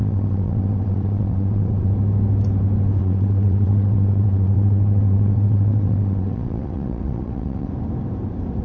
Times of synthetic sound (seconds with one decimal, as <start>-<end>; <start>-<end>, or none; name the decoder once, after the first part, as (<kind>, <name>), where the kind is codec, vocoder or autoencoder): 0.0-1.9 (vocoder, WaveNeXt); 3.0-7.7